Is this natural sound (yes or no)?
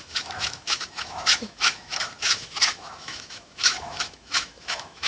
no